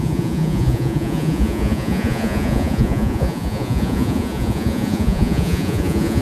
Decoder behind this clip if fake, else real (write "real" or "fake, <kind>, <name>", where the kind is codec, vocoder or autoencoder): fake, vocoder, Vocos